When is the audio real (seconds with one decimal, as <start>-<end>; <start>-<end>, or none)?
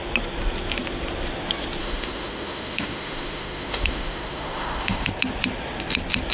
0.0-1.8; 5.1-6.3